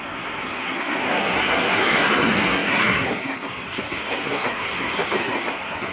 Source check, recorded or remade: remade